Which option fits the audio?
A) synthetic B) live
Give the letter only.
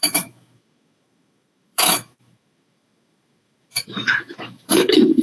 A